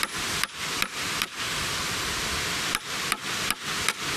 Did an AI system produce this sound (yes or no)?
yes